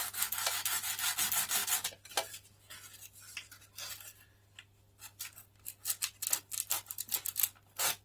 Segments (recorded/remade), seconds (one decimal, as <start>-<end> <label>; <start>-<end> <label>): 0.0-8.0 recorded

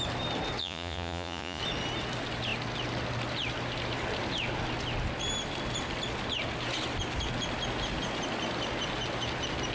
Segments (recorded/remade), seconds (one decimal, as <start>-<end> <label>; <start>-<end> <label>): 0.0-0.6 recorded; 0.6-1.6 remade; 1.6-9.7 recorded